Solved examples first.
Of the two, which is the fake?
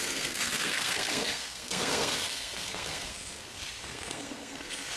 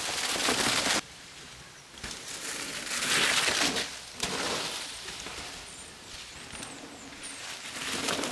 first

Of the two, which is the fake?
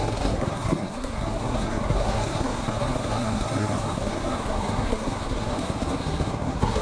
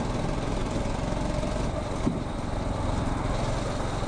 first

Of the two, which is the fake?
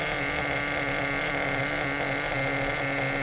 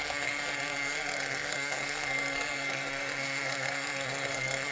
second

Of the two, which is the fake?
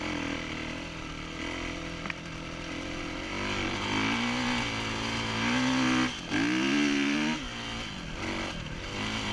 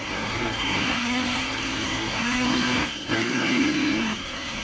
second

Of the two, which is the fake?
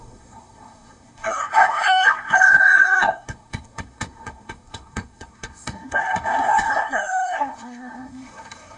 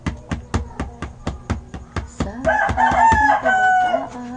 first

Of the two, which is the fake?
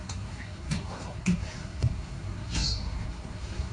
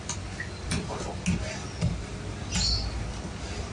first